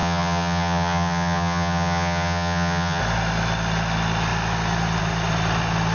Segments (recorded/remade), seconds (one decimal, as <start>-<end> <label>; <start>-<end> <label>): 0.0-3.0 remade; 3.0-5.9 recorded